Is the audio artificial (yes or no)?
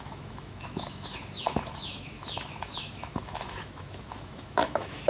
yes